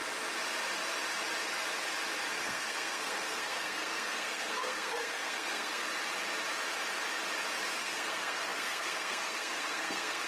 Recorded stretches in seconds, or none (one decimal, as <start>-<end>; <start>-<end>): 0.0-2.4; 5.8-7.8